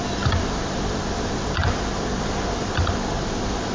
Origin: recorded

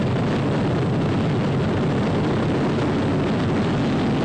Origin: recorded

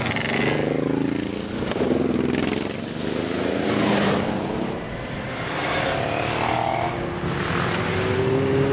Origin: recorded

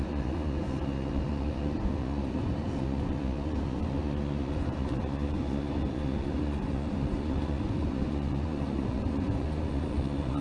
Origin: remade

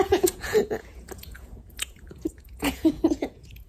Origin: remade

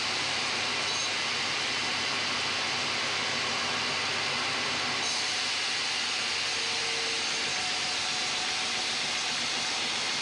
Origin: recorded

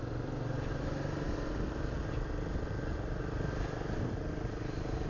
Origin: recorded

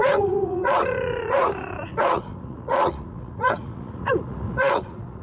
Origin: remade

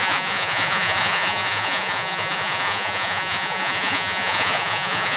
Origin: remade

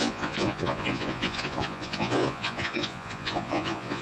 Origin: remade